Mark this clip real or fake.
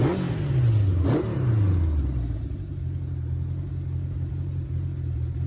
real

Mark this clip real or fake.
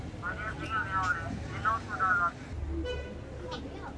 real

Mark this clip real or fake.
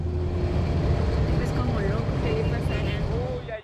real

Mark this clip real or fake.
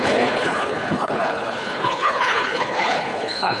fake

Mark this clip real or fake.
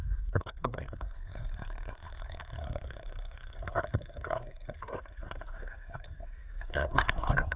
fake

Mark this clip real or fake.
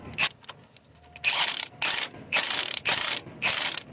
fake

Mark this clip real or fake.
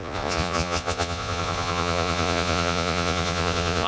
fake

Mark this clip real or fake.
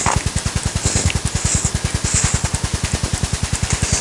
real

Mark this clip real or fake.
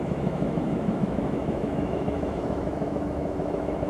fake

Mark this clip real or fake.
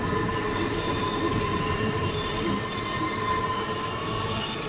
real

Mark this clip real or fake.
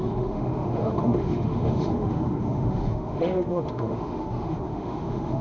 fake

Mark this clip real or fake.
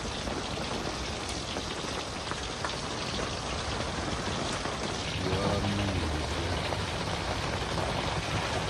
real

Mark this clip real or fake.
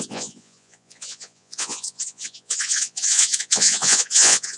fake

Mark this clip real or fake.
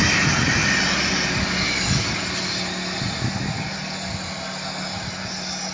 real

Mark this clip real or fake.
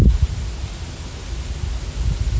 real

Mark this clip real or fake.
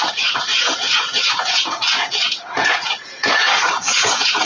fake